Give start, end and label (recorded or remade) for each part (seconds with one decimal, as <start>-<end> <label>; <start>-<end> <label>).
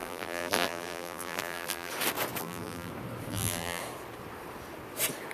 0.0-1.9 remade; 1.9-2.4 recorded; 2.4-2.9 remade; 2.9-3.3 recorded; 3.3-3.8 remade; 3.8-5.3 recorded